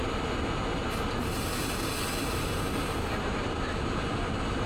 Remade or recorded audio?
recorded